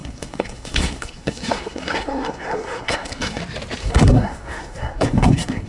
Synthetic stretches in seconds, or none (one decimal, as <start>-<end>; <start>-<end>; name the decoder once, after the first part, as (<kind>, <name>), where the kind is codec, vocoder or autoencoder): 0.0-3.4 (codec, SNAC); 3.8-5.7